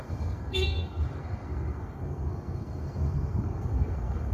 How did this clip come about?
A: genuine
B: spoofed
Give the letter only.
B